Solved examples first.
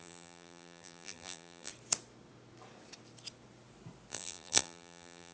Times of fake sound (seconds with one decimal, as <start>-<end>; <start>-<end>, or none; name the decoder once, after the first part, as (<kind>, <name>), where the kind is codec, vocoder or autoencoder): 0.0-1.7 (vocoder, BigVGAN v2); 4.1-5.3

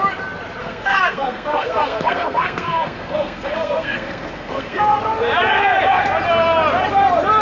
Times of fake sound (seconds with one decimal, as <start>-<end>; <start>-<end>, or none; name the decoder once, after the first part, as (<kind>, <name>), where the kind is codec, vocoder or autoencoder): 0.6-5.0 (codec, SNAC)

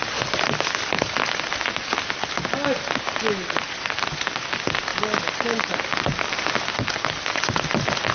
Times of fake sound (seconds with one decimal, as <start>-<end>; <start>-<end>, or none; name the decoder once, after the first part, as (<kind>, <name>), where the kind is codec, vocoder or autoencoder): none